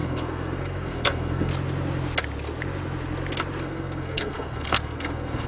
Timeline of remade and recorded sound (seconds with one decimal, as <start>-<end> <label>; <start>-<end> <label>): 0.0-1.5 remade; 1.5-3.6 recorded; 3.6-5.5 remade